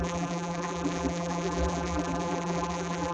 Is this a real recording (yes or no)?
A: no